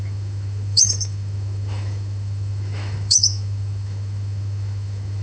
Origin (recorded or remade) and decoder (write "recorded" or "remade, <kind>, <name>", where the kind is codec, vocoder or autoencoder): remade, autoencoder, DAC-VAE